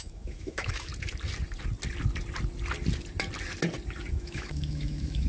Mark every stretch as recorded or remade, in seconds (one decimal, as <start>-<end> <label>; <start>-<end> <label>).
0.0-0.9 remade; 0.9-4.1 recorded; 4.1-5.3 remade